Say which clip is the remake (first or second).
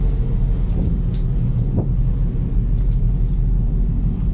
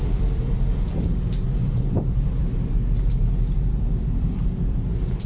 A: second